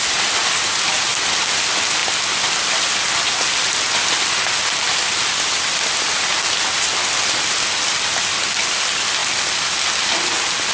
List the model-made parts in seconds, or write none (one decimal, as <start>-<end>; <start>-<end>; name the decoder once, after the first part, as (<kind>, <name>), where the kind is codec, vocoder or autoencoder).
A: none